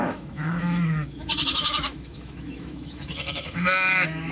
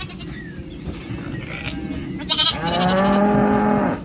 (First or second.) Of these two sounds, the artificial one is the first